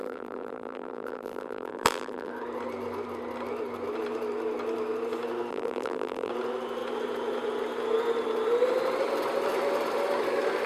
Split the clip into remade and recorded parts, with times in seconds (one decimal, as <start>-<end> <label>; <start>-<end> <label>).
0.0-2.3 remade; 2.3-5.5 recorded; 5.5-6.3 remade; 6.3-10.7 recorded

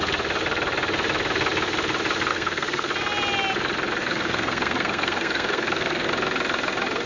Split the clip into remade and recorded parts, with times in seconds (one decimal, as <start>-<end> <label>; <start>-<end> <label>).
0.0-2.3 recorded; 2.3-2.9 remade; 2.9-4.0 recorded; 4.0-6.1 remade; 6.1-7.1 recorded